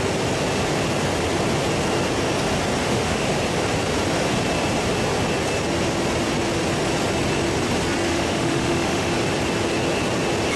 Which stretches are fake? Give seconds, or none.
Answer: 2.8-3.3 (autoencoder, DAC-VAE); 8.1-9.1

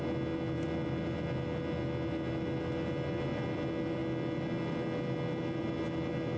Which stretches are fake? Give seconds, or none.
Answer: none

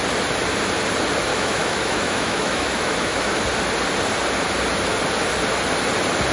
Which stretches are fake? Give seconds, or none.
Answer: 1.3-3.4 (autoencoder, DAC-VAE)

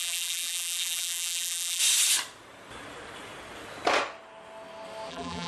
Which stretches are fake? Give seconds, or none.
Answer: 0.0-1.8 (vocoder, BigVGAN v2); 5.1-5.5

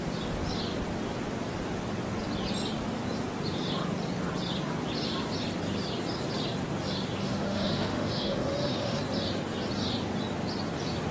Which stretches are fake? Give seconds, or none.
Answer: 7.2-9.0 (autoencoder, DAC-VAE)